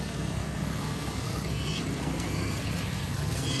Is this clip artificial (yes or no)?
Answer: yes